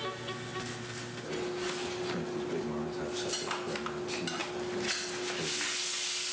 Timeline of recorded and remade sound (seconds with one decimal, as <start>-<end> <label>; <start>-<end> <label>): 0.0-6.3 recorded

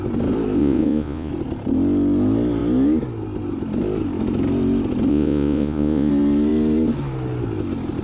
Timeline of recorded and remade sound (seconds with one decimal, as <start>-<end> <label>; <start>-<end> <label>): 0.0-0.6 recorded; 0.6-1.3 remade; 1.3-5.1 recorded; 5.1-6.1 remade; 6.1-8.0 recorded

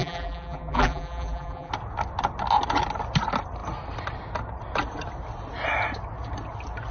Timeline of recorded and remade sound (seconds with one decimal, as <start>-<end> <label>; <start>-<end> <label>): 0.0-1.7 remade; 1.7-6.9 recorded